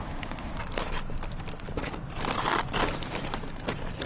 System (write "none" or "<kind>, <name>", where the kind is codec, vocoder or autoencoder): none